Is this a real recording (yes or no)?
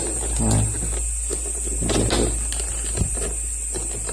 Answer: yes